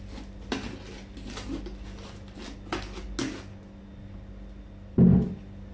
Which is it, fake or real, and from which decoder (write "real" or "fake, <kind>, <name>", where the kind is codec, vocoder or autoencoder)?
real